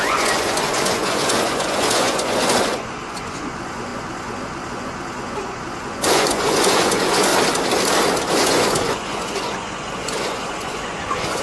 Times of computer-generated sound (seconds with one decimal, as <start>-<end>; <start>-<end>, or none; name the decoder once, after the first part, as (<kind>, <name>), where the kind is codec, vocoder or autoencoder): 0.0-7.3 (vocoder, Vocos); 8.3-11.4